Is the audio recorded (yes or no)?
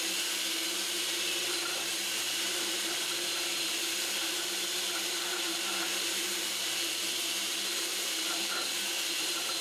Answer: no